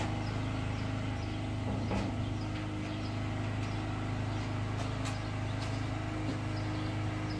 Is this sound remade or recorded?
recorded